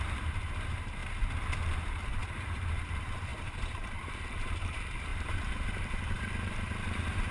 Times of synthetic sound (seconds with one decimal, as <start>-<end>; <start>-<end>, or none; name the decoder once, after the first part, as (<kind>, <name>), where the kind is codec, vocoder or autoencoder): 0.0-1.0 (vocoder, BigVGAN v2); 1.7-7.3